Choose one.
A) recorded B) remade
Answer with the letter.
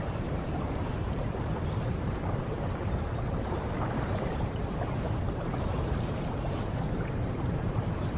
B